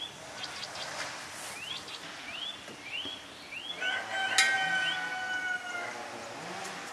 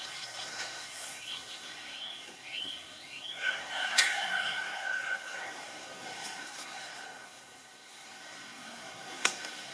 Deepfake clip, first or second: second